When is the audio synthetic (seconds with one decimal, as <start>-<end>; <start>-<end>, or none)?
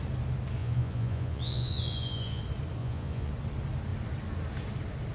0.6-2.4; 2.8-3.3